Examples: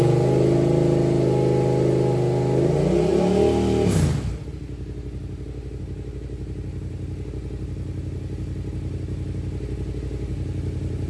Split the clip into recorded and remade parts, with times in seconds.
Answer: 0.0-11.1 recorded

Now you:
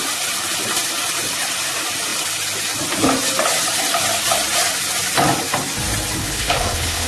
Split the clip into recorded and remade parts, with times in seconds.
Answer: 0.0-6.2 recorded; 6.2-7.1 remade

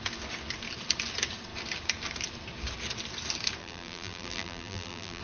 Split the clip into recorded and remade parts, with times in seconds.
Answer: 0.0-3.6 recorded; 3.6-5.2 remade

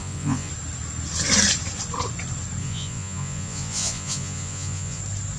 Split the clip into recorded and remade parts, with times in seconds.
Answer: 0.0-0.5 remade; 0.5-2.6 recorded; 2.6-5.0 remade; 5.0-5.4 recorded

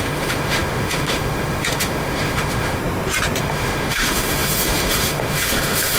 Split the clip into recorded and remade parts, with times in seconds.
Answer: 0.0-2.8 remade; 2.8-3.4 recorded; 3.4-6.0 remade

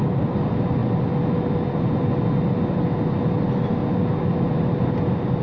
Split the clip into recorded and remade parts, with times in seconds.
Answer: 0.0-5.4 recorded

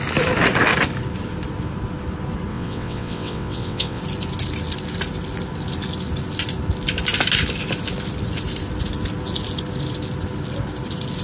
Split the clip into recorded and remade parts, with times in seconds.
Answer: 0.0-2.5 recorded; 2.5-4.0 remade; 4.0-11.2 recorded

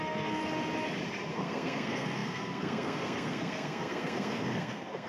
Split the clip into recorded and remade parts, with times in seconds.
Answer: 0.0-0.4 remade; 0.4-1.3 recorded; 1.3-5.1 remade